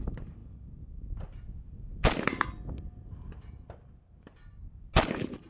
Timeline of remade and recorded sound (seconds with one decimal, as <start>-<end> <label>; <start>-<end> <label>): 0.0-5.5 recorded